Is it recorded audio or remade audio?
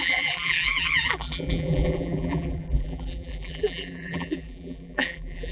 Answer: remade